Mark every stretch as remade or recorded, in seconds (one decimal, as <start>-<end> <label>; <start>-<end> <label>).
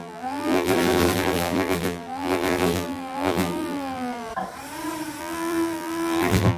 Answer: 0.0-4.3 remade; 4.3-5.2 recorded; 5.2-6.6 remade